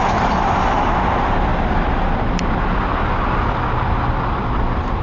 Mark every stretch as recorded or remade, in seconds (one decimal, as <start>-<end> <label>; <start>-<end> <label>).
0.0-5.0 recorded